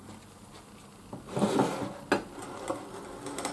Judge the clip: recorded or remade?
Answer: recorded